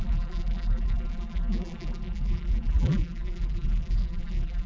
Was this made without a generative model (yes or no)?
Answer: no